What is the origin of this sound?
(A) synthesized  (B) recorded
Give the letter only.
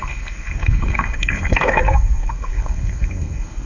A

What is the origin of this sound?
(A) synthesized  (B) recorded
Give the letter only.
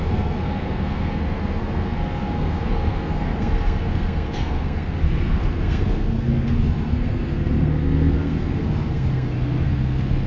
A